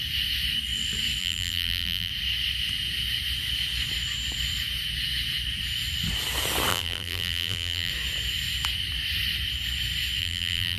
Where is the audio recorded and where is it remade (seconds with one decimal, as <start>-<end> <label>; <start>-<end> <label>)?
0.0-1.2 recorded; 1.2-2.1 remade; 2.1-6.7 recorded; 6.7-7.9 remade; 7.9-10.2 recorded; 10.2-10.8 remade